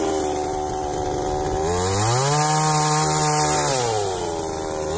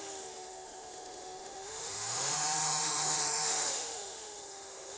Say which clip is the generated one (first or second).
second